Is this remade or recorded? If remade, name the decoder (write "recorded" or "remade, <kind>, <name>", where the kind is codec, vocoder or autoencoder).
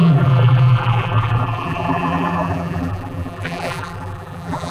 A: remade, vocoder, BigVGAN v2